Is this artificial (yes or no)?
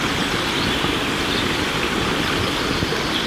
no